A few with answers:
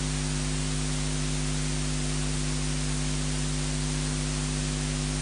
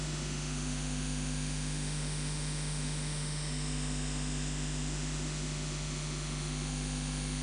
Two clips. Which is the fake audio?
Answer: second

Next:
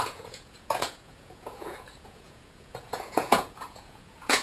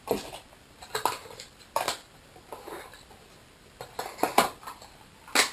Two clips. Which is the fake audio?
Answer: first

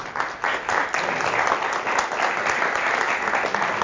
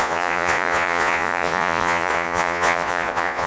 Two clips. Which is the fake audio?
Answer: second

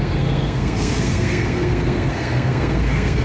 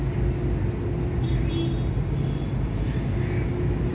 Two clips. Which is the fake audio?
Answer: first